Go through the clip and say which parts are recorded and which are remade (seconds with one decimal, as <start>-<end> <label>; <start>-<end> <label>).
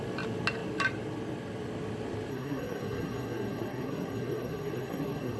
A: 0.0-2.3 recorded; 2.3-5.4 remade